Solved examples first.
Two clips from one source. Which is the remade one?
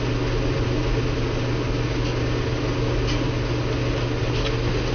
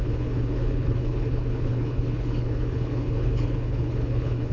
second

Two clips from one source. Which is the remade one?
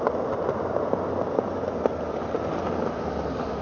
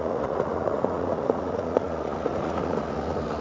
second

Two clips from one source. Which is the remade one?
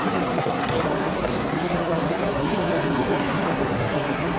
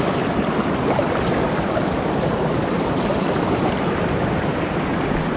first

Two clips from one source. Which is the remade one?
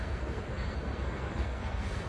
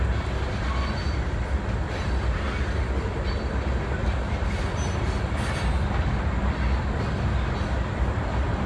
first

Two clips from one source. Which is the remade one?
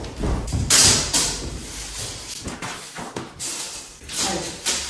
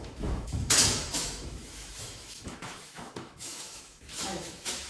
second